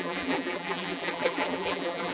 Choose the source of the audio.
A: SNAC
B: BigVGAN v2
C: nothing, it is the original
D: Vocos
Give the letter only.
B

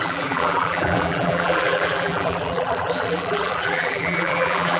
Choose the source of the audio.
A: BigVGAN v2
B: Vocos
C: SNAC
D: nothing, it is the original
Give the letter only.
A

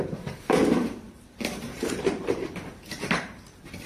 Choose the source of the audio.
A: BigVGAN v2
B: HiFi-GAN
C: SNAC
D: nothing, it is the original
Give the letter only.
A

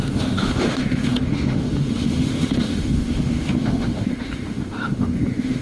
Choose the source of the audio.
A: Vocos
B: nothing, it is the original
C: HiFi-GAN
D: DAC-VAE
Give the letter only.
D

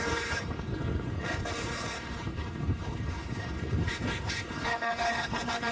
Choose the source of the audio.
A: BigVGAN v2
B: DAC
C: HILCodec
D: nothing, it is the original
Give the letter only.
C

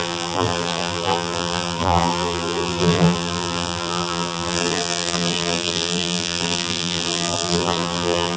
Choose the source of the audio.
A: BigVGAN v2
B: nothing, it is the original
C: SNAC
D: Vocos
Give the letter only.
A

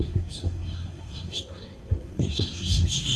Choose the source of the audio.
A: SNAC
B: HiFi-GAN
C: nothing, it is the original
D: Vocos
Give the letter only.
A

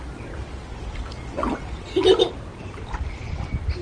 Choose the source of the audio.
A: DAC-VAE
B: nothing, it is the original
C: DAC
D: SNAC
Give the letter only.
B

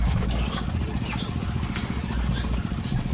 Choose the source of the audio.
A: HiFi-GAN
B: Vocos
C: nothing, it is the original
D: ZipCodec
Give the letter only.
C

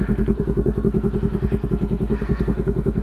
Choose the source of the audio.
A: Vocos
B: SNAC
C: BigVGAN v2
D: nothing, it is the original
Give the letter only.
B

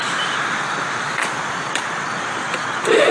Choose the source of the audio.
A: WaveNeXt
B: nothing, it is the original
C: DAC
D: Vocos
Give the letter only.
B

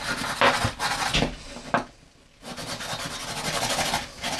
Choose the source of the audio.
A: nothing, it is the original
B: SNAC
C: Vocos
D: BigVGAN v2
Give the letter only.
A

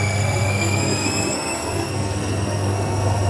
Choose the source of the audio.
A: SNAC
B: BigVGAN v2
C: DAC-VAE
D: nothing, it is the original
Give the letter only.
A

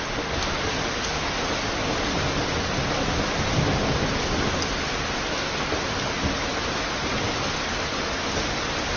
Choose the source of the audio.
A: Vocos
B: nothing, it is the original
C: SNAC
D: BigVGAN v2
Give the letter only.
B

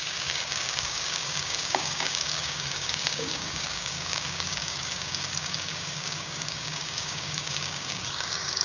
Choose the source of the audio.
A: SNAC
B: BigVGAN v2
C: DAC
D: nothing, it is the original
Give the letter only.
C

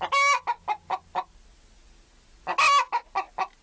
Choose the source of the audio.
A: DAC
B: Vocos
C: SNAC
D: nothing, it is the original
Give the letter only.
D